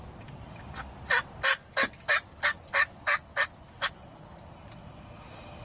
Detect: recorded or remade recorded